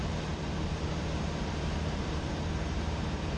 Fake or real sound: fake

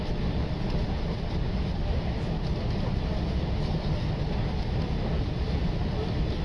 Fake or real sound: real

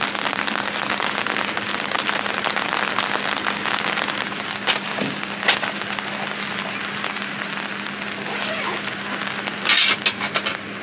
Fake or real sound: real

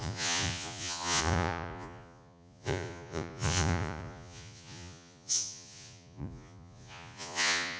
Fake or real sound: fake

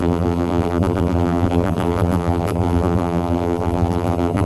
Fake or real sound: fake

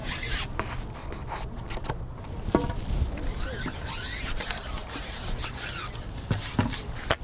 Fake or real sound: real